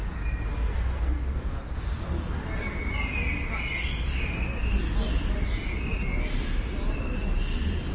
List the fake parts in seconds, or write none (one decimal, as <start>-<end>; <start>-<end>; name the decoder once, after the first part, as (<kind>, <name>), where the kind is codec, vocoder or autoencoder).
0.7-1.4 (codec, SNAC)